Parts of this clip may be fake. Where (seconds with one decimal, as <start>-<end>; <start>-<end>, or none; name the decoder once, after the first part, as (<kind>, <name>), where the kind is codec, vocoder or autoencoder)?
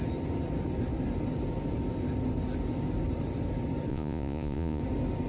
3.9-4.8 (vocoder, Vocos)